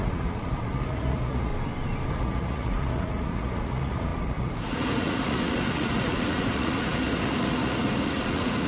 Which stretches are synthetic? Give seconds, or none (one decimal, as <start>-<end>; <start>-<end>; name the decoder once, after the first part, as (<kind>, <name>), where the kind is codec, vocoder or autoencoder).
0.0-1.5 (vocoder, Vocos); 2.1-8.7